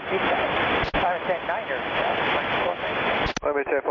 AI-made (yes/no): no